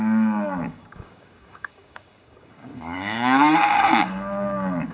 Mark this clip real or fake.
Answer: fake